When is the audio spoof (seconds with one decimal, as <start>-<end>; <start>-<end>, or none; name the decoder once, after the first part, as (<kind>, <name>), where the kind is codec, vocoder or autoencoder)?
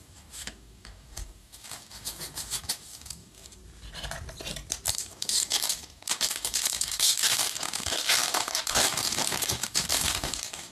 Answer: 0.0-3.6 (codec, DAC); 4.9-10.7